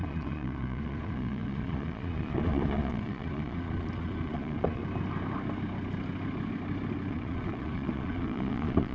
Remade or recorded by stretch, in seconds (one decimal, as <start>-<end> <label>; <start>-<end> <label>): 0.0-4.8 remade; 4.8-7.1 recorded; 7.1-8.9 remade